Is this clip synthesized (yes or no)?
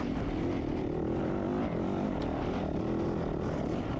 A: no